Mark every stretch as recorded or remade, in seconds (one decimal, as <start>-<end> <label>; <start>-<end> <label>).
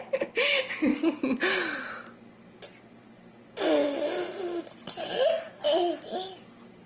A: 0.0-6.9 recorded